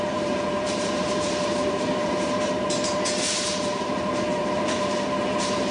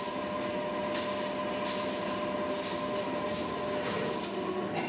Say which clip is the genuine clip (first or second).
second